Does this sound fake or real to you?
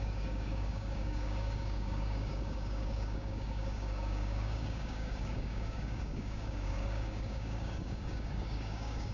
fake